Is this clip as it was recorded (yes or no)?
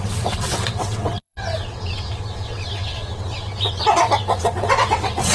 no